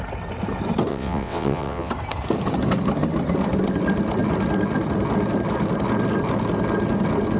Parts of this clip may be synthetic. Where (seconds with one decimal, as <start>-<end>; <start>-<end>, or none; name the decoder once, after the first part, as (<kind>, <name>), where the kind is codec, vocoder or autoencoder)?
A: 0.9-1.9 (vocoder, WaveNeXt)